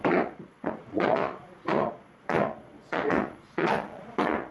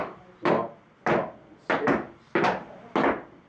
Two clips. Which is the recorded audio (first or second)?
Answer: second